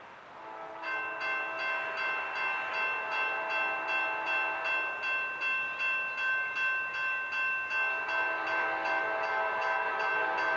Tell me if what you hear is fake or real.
real